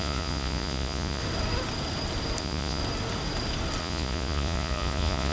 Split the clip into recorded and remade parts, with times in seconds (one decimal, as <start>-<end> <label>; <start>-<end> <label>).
0.0-1.2 remade; 1.2-2.4 recorded; 2.4-2.8 remade; 2.8-3.8 recorded; 3.8-5.3 remade